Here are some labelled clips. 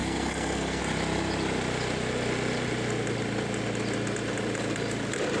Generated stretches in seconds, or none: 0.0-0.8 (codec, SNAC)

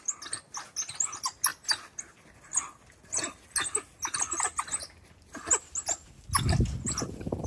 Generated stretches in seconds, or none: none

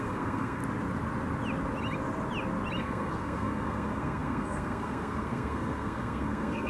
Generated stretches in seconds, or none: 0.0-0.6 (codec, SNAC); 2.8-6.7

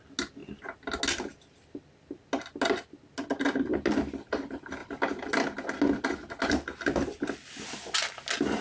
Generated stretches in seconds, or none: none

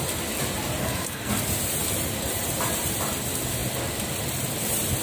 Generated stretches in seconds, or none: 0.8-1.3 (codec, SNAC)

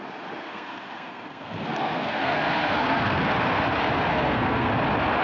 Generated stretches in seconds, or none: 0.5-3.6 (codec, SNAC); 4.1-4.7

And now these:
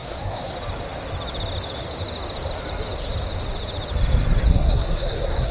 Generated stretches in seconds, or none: 0.0-0.5 (codec, SNAC); 4.5-5.5